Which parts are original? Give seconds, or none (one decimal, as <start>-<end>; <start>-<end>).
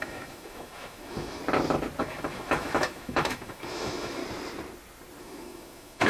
1.4-2.0; 4.2-5.2